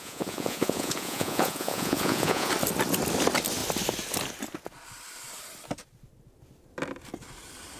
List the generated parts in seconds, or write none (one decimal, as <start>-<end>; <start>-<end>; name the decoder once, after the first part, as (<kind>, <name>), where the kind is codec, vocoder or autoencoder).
0.0-2.5 (vocoder, Vocos)